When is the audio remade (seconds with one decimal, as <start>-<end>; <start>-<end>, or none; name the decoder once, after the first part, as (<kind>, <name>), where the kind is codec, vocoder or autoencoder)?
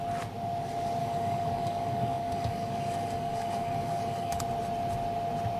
1.0-4.4 (codec, DAC)